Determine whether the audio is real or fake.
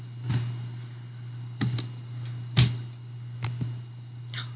real